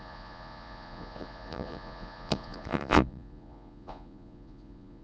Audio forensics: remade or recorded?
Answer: remade